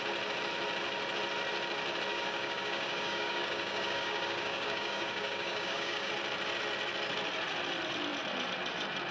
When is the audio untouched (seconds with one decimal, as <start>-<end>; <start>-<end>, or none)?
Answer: 0.0-2.1; 6.1-9.1